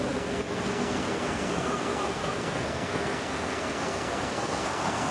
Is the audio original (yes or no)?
no